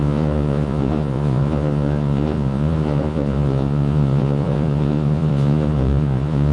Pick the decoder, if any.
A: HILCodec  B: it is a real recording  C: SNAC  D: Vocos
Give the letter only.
D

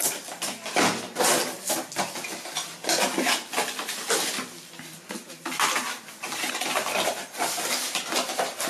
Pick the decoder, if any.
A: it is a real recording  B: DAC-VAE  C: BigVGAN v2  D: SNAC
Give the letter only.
A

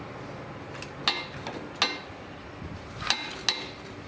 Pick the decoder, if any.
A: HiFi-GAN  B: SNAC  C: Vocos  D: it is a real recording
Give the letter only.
D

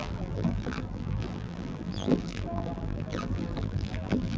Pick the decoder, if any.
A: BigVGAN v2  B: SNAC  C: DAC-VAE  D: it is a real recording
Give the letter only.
A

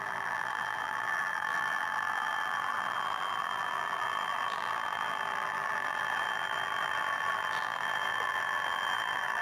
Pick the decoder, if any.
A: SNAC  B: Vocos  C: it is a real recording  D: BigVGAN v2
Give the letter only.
D